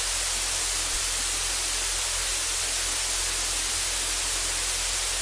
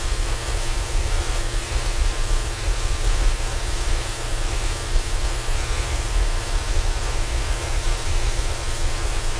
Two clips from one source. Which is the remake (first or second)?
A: second